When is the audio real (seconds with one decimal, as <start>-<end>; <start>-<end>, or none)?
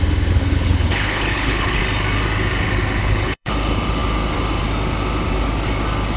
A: 0.0-0.4; 1.8-3.0; 3.5-6.2